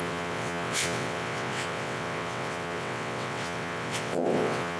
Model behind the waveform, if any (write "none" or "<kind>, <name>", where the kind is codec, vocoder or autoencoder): vocoder, WaveNeXt